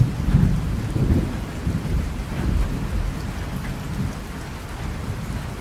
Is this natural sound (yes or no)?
yes